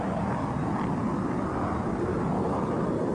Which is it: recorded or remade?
recorded